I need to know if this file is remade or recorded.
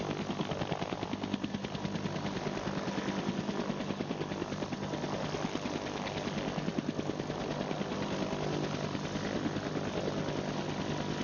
recorded